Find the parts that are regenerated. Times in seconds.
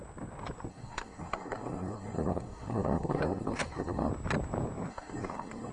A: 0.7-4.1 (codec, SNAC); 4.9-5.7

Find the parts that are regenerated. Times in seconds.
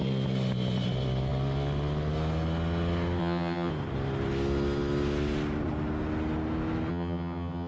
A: 3.2-3.7 (vocoder, HiFi-GAN); 6.9-7.7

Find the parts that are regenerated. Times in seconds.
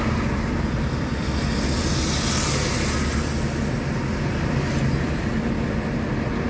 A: none